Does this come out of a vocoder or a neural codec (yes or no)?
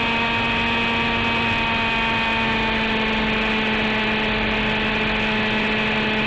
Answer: no